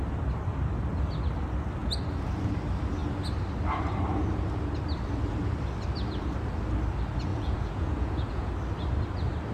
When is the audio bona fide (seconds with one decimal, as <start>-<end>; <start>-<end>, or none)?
0.0-7.3; 8.5-9.5